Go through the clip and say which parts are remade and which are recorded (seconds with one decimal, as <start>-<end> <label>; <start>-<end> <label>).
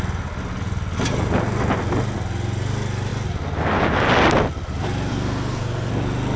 0.0-5.1 recorded; 5.1-5.9 remade; 5.9-6.4 recorded